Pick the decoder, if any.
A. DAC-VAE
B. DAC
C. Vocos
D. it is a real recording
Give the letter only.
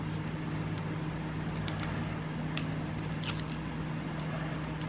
D